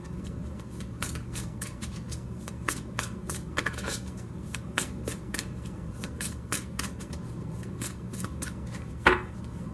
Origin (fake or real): fake